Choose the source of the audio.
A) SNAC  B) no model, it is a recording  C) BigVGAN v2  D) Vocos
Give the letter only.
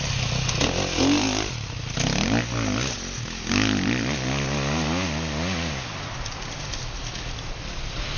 B